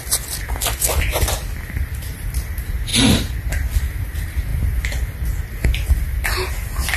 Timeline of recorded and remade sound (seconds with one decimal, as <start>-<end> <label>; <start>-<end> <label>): 0.0-7.0 recorded